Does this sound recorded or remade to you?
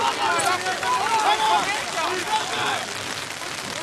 recorded